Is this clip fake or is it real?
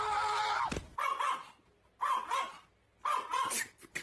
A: real